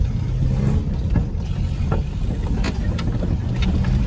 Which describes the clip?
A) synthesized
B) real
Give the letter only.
B